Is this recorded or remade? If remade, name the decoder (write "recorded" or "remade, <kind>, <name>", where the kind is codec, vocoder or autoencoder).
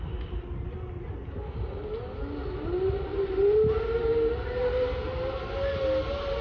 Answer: recorded